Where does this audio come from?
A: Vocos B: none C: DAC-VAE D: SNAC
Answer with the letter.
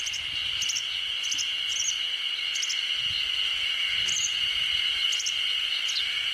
B